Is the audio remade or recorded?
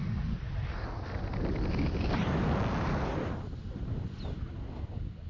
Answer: recorded